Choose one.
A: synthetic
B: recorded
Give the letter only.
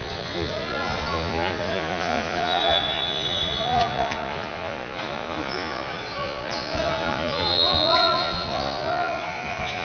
A